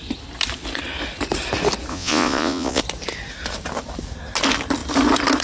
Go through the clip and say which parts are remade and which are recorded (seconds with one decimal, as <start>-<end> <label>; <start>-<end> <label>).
0.0-1.9 recorded; 1.9-2.8 remade; 2.8-5.4 recorded